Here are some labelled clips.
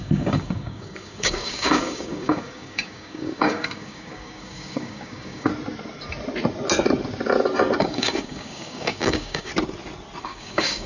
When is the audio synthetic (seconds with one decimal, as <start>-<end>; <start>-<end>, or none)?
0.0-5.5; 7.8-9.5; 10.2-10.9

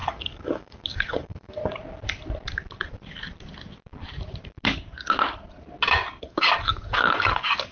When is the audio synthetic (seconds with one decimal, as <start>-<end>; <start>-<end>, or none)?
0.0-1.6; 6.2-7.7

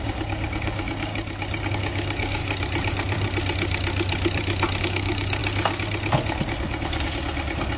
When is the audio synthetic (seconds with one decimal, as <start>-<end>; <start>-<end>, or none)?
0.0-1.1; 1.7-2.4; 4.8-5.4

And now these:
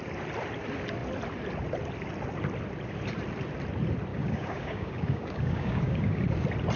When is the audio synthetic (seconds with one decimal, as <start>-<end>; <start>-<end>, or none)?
4.1-6.2

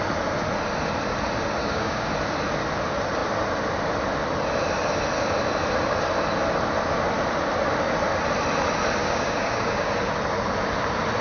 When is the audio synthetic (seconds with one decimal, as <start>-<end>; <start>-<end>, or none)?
1.6-2.1; 9.0-9.9